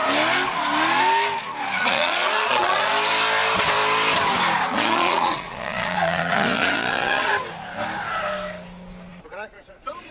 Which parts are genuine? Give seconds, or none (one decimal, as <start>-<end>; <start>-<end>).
0.0-1.8; 2.9-4.7; 7.3-9.1